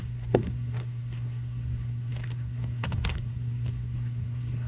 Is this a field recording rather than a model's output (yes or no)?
no